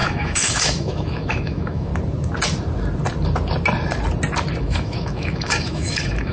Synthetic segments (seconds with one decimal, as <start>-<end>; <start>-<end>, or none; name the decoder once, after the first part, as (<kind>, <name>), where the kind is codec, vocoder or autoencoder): 0.0-1.9 (autoencoder, DAC-VAE); 4.6-6.3